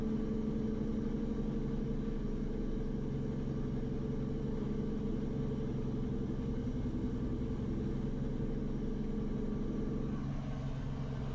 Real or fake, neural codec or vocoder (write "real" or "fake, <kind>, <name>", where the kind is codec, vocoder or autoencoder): real